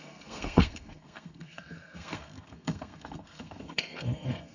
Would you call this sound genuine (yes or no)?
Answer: no